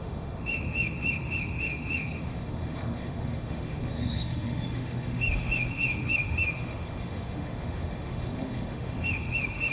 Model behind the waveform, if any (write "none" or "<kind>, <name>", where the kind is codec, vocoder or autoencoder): autoencoder, DAC-VAE